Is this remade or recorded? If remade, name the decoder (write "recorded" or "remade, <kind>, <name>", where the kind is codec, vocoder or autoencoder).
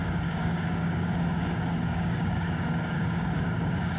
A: remade, codec, DAC